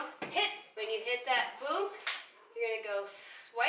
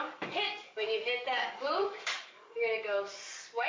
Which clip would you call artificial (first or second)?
second